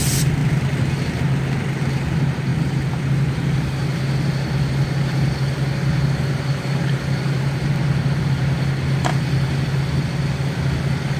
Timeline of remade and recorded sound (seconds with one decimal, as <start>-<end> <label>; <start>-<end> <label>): 0.0-0.4 recorded; 0.4-1.2 remade; 1.2-2.5 recorded; 2.5-7.7 remade; 7.7-9.1 recorded; 9.1-11.2 remade